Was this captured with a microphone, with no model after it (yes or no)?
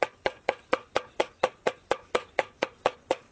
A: no